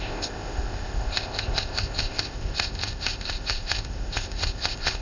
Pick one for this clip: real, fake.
fake